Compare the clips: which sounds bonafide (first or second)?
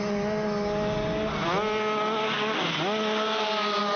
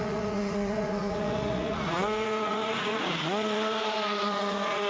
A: first